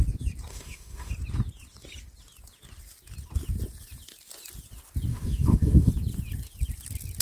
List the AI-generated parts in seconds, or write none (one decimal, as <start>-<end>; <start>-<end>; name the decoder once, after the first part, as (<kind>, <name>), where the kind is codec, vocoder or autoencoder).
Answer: 0.5-1.1 (autoencoder, DAC-VAE); 5.1-5.9